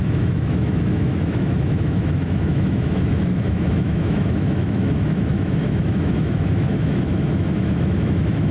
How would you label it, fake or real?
fake